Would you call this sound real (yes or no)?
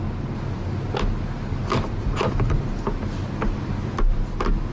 yes